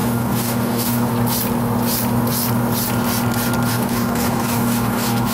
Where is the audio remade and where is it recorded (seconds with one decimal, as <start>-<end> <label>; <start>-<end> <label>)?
0.0-1.1 remade; 1.1-3.7 recorded; 3.7-5.3 remade